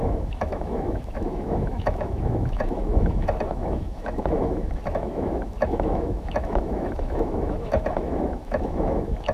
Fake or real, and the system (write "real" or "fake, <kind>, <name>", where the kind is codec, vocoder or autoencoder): fake, autoencoder, DAC-VAE